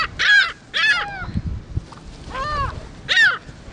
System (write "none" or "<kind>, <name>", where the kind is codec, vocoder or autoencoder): none